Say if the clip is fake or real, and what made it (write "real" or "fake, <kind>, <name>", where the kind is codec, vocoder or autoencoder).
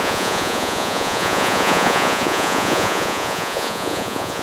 fake, vocoder, Vocos